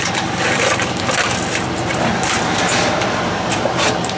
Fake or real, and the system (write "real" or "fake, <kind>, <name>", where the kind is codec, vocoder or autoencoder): fake, vocoder, BigVGAN v2